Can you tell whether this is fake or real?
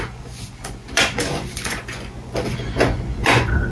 fake